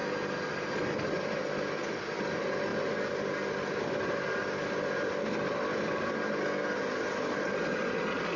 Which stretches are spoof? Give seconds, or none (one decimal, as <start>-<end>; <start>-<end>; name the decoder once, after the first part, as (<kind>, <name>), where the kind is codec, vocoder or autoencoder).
none